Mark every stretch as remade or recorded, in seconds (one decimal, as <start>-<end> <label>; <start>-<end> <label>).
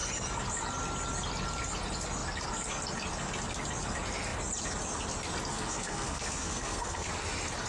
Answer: 0.0-5.5 recorded; 5.5-7.1 remade; 7.1-7.7 recorded